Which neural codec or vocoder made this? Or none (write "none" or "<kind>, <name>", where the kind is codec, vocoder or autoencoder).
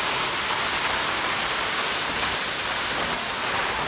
none